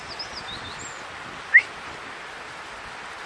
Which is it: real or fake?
real